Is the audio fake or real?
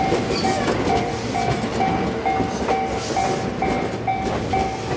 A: real